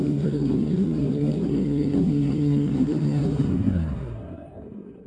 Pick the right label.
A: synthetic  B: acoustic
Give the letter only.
A